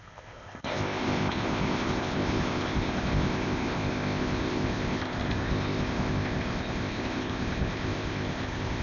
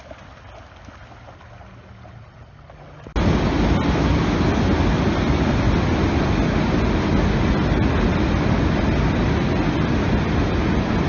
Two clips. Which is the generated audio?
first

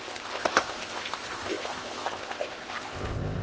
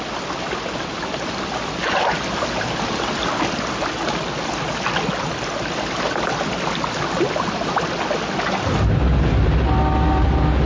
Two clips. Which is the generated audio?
first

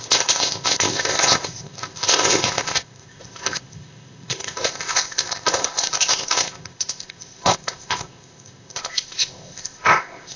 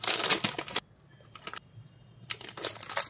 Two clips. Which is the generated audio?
first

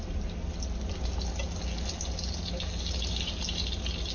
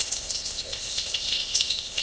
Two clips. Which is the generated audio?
second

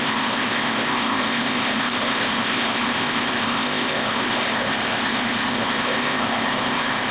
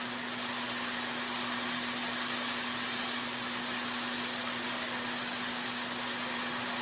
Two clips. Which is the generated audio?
first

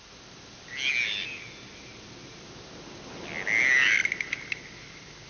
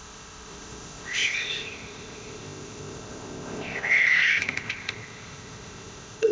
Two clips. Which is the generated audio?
second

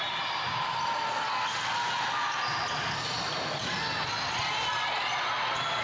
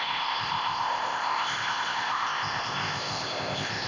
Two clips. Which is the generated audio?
second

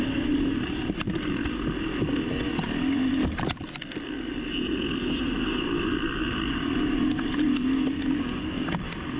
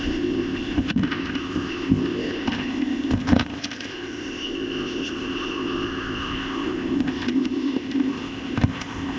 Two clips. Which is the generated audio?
second